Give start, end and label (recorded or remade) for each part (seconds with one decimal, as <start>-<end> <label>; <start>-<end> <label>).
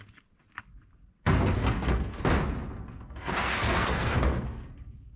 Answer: 0.0-1.6 recorded; 1.6-2.2 remade; 2.2-2.8 recorded; 2.8-5.2 remade